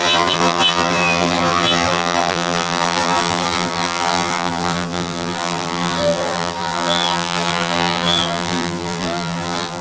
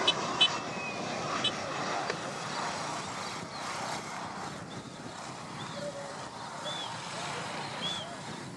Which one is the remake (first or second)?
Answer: first